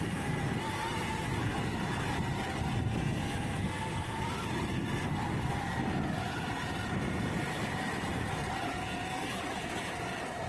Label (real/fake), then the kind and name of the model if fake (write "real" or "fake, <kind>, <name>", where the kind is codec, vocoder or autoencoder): real